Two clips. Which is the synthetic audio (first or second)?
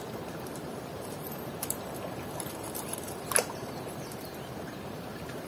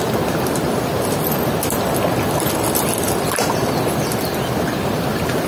first